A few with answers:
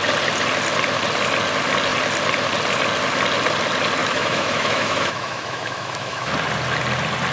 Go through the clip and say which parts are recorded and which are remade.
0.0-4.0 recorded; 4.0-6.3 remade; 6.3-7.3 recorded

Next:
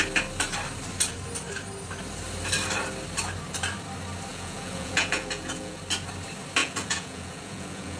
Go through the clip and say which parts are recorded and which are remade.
0.0-4.3 recorded; 4.3-5.8 remade; 5.8-6.6 recorded; 6.6-8.0 remade

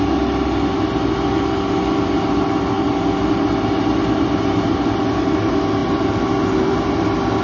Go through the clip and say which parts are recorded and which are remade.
0.0-7.4 recorded

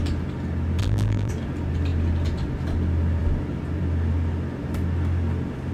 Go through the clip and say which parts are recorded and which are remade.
0.0-0.8 recorded; 0.8-1.3 remade; 1.3-5.7 recorded

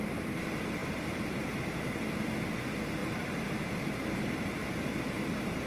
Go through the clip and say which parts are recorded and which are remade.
0.0-0.8 recorded; 0.8-1.9 remade; 1.9-3.0 recorded; 3.0-3.6 remade; 3.6-5.7 recorded